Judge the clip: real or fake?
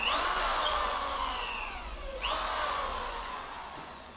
fake